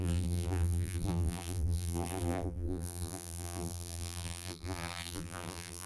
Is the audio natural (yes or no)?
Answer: no